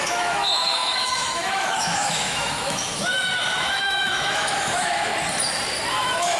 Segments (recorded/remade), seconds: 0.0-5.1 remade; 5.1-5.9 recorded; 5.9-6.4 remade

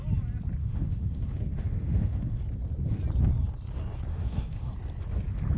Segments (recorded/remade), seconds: 0.0-0.6 recorded; 0.6-2.4 remade; 2.4-4.1 recorded; 4.1-4.7 remade; 4.7-5.6 recorded